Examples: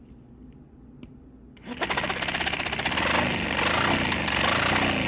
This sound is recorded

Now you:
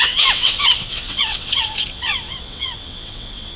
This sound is remade